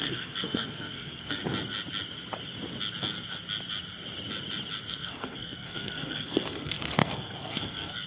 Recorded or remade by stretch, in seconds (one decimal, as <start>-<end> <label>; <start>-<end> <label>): 0.0-1.4 remade; 1.4-4.9 recorded; 4.9-8.1 remade